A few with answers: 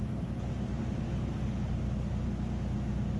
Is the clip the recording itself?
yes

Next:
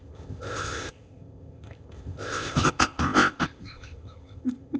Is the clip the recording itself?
no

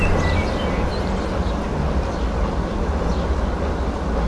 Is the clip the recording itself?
yes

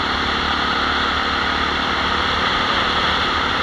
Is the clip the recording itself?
yes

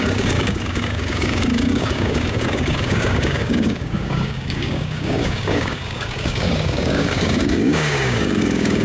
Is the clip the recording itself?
no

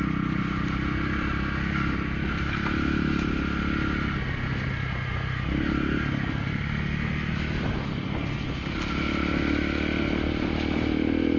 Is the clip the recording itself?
yes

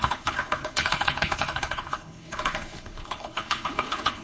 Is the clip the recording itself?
no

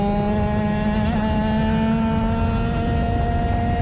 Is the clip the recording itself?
yes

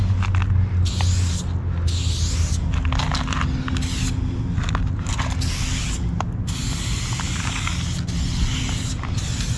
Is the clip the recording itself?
yes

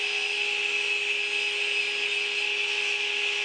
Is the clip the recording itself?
yes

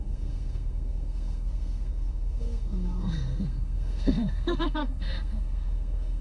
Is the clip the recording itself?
no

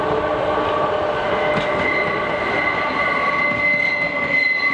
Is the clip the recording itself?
yes